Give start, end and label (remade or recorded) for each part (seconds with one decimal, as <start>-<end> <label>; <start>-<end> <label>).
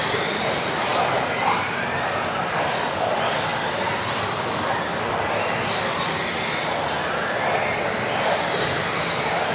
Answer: 0.0-9.5 recorded